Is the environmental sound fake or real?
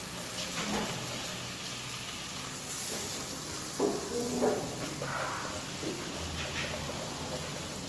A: real